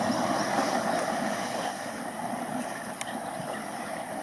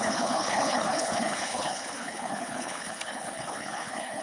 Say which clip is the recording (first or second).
first